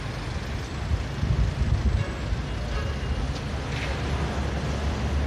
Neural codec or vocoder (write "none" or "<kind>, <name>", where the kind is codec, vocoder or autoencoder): none